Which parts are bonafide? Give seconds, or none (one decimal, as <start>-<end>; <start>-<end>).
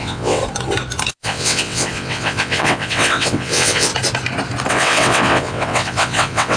0.4-1.1; 3.9-4.7